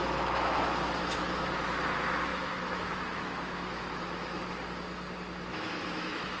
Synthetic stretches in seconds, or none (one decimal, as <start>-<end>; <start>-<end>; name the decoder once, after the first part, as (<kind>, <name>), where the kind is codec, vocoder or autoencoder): 0.0-1.2 (autoencoder, DAC-VAE); 2.3-4.4; 5.5-6.4